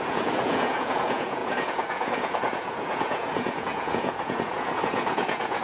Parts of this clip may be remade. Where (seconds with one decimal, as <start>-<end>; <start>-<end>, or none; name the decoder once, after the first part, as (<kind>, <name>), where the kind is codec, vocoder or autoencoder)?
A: 0.0-5.6 (vocoder, Vocos)